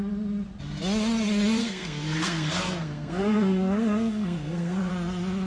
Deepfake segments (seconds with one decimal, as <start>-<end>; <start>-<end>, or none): 1.6-4.9